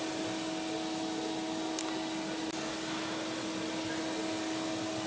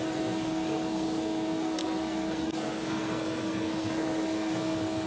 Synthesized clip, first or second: second